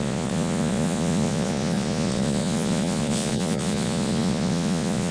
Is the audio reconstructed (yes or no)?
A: yes